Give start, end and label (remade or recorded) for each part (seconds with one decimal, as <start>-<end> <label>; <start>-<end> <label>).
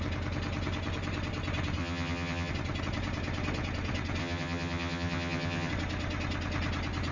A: 0.0-1.8 recorded; 1.8-2.5 remade; 2.5-4.2 recorded; 4.2-5.7 remade; 5.7-7.1 recorded